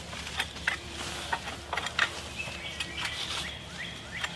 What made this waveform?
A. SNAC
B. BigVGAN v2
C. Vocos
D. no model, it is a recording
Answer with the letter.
D